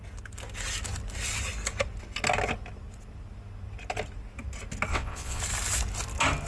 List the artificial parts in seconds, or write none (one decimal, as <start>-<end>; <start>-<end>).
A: 4.9-5.4